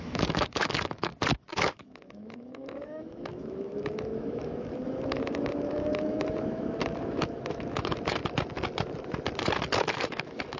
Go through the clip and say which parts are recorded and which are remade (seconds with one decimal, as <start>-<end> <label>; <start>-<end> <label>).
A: 0.0-1.1 remade; 1.1-1.7 recorded; 1.7-8.2 remade; 8.2-9.9 recorded; 9.9-10.6 remade